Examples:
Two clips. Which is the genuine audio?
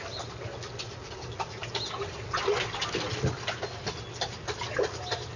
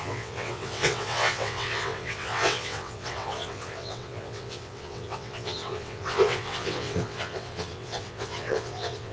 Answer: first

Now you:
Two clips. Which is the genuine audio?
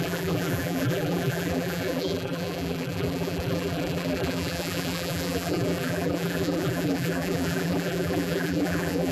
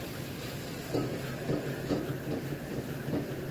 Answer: second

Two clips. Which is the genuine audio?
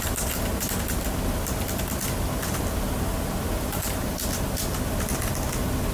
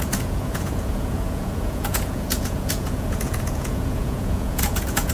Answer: first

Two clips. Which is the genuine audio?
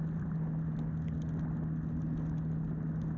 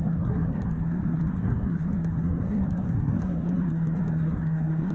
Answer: first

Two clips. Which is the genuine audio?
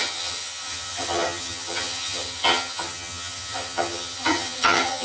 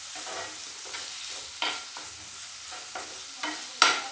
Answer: second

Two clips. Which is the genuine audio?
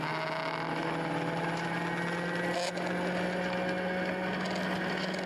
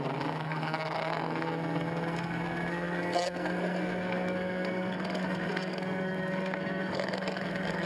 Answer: first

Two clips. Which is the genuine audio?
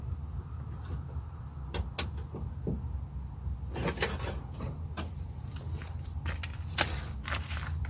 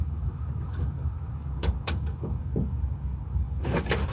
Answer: first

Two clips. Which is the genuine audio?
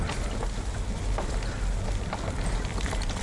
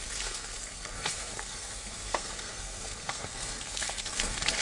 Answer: first